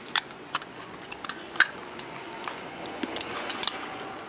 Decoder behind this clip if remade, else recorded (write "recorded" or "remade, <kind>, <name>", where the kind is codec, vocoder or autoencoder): remade, vocoder, Vocos